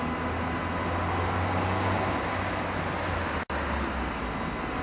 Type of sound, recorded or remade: recorded